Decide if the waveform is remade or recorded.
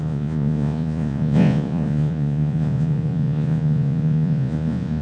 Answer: remade